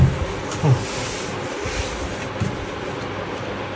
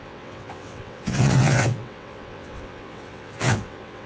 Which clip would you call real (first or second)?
first